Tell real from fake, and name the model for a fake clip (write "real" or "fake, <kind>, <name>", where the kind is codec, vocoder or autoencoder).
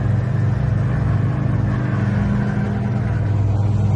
real